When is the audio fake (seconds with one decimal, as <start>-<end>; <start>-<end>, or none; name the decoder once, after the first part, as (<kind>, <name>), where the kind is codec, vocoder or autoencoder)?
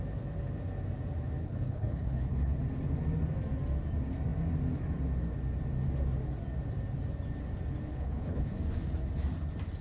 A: 1.4-2.6 (codec, HILCodec); 7.9-8.5